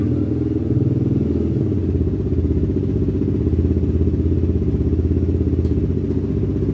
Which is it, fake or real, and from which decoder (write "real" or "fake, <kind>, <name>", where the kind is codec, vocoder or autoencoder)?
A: real